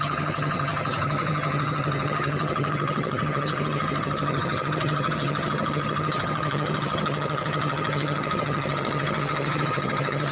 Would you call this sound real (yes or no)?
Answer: no